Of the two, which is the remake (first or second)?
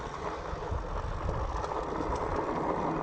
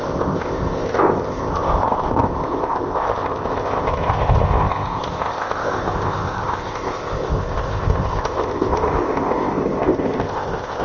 second